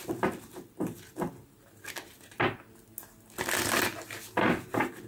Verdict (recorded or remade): recorded